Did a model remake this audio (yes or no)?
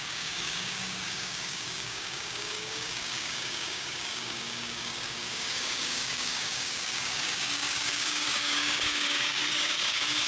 yes